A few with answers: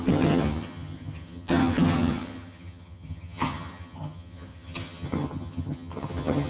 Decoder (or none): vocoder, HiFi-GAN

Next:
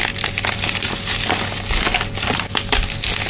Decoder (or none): none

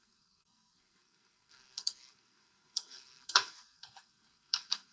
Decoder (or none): codec, SNAC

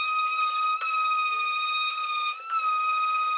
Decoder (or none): none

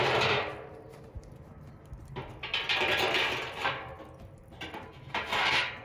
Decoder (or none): vocoder, BigVGAN v2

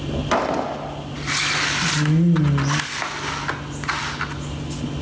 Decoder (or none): none